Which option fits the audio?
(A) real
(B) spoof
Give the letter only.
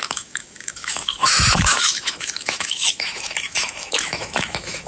B